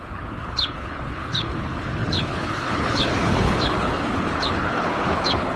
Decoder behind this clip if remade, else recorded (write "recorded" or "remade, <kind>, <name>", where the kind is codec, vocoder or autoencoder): remade, codec, HILCodec